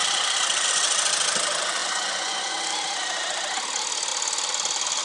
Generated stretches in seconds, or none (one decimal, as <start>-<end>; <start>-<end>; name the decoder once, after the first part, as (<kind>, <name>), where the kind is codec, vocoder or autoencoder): 1.8-2.5 (vocoder, Vocos)